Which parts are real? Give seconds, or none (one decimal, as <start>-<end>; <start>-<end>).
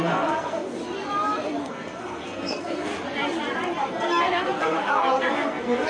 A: 0.8-1.6; 2.9-3.9